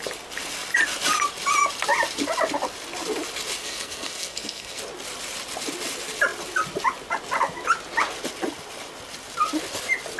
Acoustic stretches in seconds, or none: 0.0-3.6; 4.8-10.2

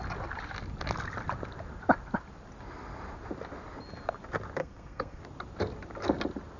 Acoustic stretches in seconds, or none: 0.0-4.6; 5.2-6.6

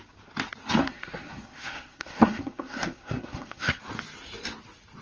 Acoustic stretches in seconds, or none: 0.0-0.8; 3.8-5.0

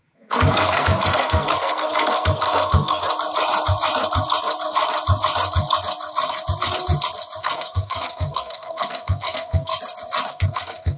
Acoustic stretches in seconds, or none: 3.0-7.4; 9.7-10.3

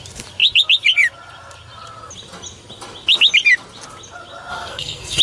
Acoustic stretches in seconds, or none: 0.0-4.5

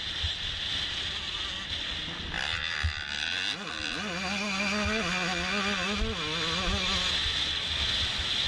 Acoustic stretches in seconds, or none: 0.0-8.5

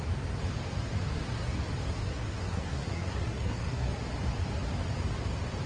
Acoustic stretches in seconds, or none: 0.0-1.1; 1.6-2.0; 3.9-5.7